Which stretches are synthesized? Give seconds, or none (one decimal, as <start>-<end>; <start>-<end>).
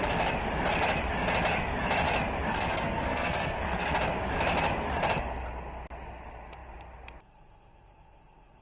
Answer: 2.5-3.9